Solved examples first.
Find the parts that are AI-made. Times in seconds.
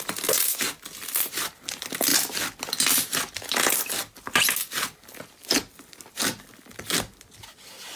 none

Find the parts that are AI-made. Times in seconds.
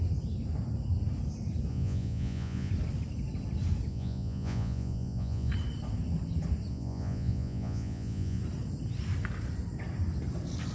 1.7-2.7 (vocoder, Vocos); 3.9-5.5; 6.7-8.4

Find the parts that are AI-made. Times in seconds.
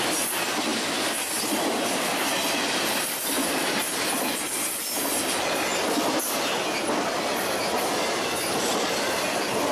none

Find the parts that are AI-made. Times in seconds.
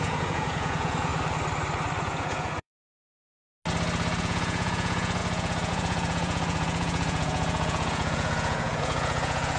0.0-1.1 (vocoder, Vocos); 2.0-3.0; 4.2-9.6